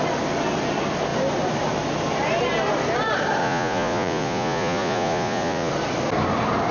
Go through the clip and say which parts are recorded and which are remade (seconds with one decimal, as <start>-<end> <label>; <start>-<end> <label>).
0.0-3.4 recorded; 3.4-5.7 remade; 5.7-6.7 recorded